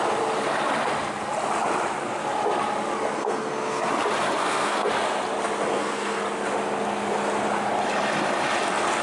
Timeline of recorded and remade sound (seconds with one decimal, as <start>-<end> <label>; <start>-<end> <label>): 0.0-3.1 recorded; 3.1-3.9 remade; 3.9-4.4 recorded; 4.4-4.9 remade; 4.9-5.7 recorded; 5.7-6.2 remade; 6.2-9.0 recorded